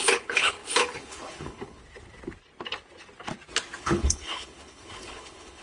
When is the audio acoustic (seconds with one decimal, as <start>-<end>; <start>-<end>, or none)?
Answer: 1.8-3.8